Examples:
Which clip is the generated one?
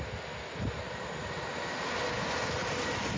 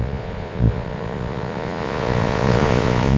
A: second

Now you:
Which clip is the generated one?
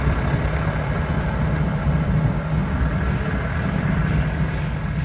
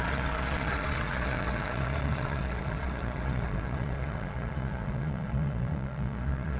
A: second